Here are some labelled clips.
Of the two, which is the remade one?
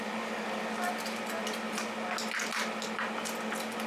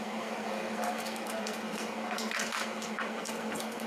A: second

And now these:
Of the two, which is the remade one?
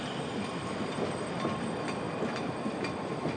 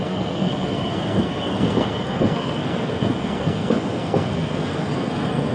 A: second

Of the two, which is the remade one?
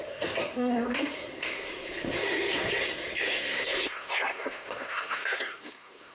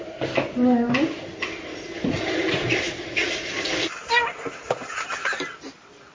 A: first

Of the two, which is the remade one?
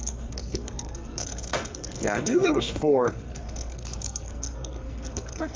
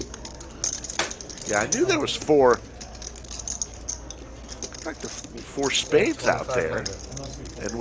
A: first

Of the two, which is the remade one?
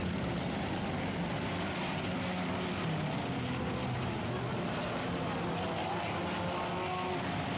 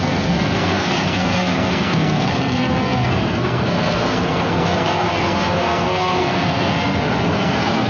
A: second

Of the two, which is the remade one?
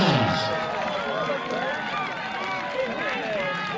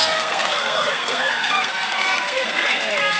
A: second